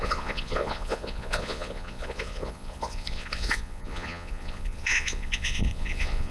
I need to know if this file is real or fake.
fake